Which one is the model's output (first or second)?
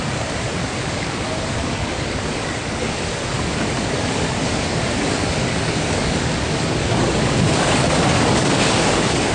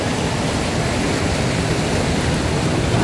first